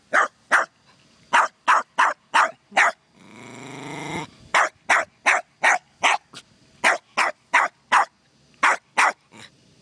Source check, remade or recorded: recorded